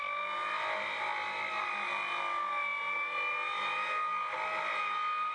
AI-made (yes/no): no